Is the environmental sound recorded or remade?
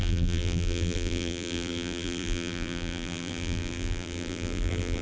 remade